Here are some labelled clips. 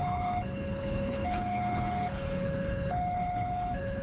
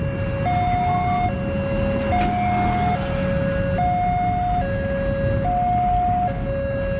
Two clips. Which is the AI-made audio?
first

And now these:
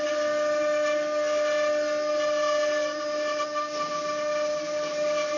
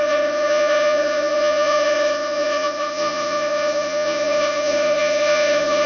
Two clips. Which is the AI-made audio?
second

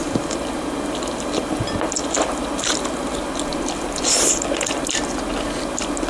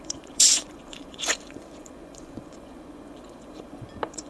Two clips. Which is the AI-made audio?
second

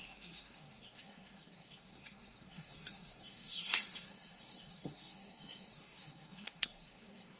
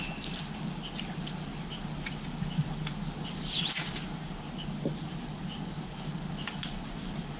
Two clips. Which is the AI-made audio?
first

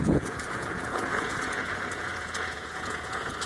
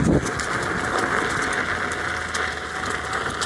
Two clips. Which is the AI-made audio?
first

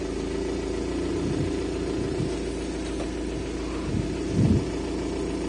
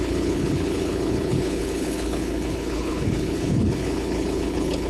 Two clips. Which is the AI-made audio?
second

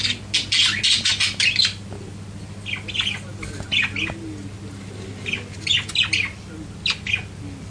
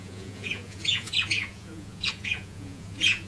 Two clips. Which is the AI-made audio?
second